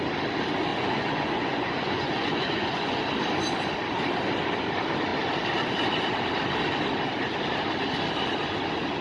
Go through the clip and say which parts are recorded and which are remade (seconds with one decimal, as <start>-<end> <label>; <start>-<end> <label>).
0.0-0.7 recorded; 0.7-3.0 remade; 3.0-9.0 recorded